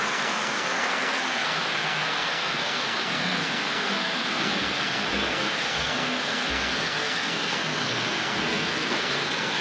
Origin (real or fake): fake